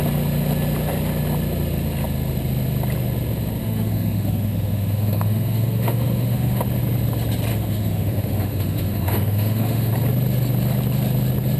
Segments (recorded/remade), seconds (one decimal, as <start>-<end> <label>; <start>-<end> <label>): 0.0-3.6 recorded; 3.6-6.6 remade; 6.6-7.5 recorded; 7.5-9.9 remade; 9.9-11.6 recorded